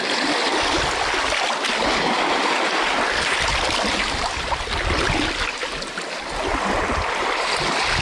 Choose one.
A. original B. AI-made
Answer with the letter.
A